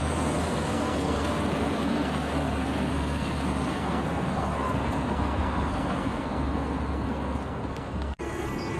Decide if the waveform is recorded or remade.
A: remade